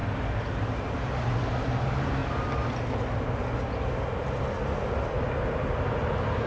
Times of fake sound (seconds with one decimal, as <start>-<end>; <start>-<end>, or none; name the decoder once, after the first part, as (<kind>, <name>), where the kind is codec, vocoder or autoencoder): none